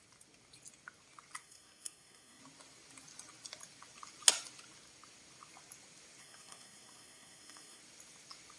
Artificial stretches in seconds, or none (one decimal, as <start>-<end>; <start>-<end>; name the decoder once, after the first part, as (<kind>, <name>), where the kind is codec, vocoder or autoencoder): 1.4-2.4 (codec, SNAC); 6.2-7.8